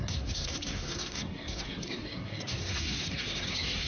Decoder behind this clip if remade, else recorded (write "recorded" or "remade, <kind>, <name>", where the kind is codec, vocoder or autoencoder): remade, codec, SNAC